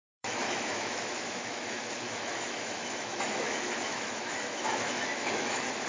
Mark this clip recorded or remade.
remade